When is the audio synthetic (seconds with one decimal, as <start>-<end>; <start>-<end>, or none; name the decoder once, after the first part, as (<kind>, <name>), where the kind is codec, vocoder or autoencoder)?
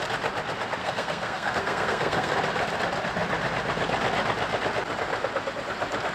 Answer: 0.8-2.3 (codec, SNAC)